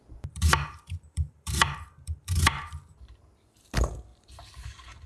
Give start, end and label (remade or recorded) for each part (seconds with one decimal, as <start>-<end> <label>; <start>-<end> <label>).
0.0-3.1 remade; 3.1-4.1 recorded; 4.1-5.1 remade